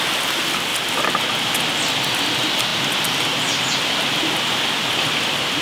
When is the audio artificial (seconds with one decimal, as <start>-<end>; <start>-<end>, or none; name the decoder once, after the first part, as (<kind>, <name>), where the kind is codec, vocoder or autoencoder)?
none